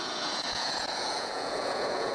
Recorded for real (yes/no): no